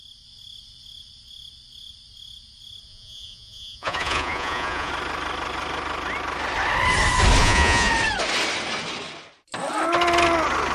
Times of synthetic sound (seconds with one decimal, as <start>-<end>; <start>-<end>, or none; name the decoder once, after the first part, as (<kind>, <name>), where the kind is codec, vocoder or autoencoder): 2.9-4.9 (vocoder, Vocos); 7.4-7.9